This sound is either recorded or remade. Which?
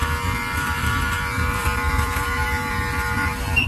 remade